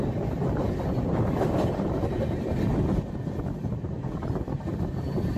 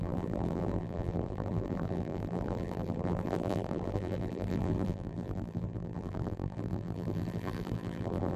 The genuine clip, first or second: first